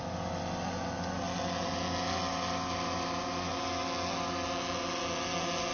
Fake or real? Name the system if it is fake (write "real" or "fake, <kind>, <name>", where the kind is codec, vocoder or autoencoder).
real